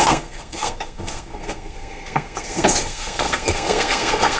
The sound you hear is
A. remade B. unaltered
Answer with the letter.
A